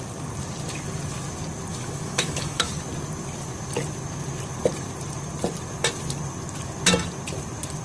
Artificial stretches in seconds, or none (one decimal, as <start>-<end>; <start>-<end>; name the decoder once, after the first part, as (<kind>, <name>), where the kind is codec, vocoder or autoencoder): 1.7-2.7 (autoencoder, DAC-VAE)